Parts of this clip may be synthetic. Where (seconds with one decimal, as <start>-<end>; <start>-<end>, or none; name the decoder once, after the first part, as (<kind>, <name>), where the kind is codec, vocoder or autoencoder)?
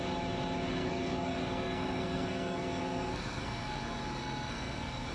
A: 0.7-3.8 (codec, SNAC); 4.2-5.1